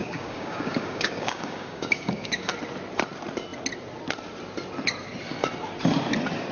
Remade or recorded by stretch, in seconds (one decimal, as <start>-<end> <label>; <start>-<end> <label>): 0.0-2.5 remade; 2.5-6.5 recorded